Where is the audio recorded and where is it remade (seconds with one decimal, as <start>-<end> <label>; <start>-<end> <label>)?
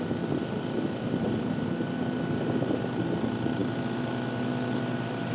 0.0-5.3 recorded